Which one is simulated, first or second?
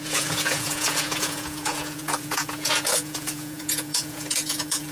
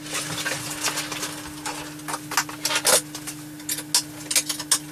first